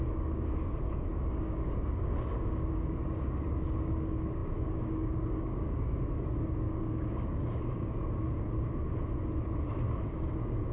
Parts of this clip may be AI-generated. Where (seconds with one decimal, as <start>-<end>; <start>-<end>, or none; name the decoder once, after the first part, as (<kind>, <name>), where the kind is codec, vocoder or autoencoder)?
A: 0.0-9.0 (codec, DAC); 10.1-10.7